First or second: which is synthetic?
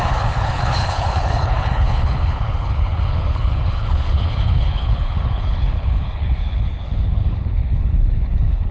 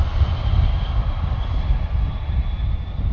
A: first